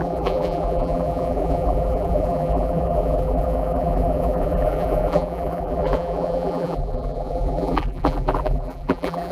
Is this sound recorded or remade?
remade